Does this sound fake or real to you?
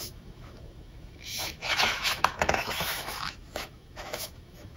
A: fake